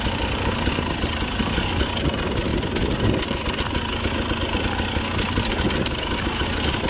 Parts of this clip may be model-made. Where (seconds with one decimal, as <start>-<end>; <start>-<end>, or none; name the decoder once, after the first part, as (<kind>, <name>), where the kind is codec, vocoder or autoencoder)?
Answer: none